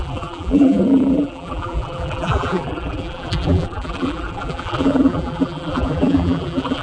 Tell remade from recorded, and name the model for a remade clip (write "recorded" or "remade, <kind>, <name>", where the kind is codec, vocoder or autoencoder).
remade, vocoder, BigVGAN v2